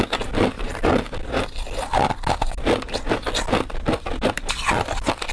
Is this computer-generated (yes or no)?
no